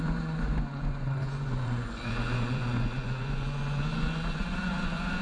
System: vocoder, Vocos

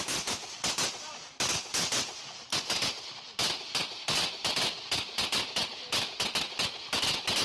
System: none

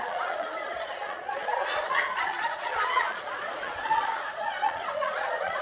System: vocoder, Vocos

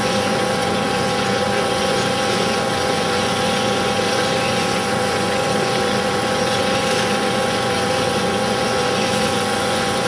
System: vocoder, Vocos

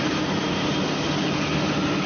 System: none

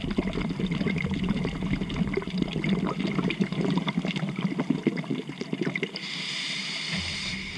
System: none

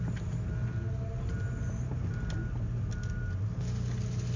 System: none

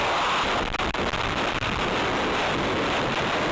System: none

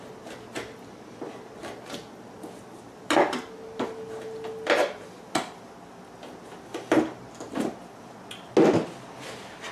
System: none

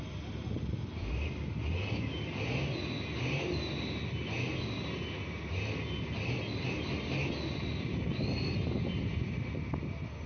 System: none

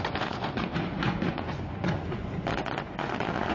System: vocoder, Vocos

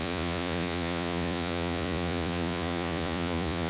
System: vocoder, Vocos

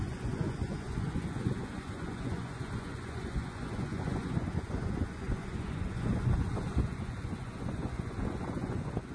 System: vocoder, Vocos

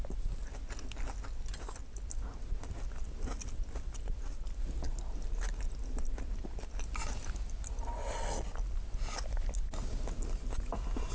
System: none